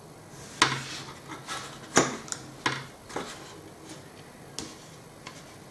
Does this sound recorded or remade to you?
recorded